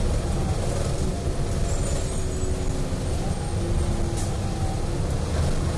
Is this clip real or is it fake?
real